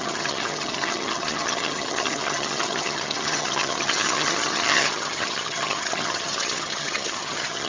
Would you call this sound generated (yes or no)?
yes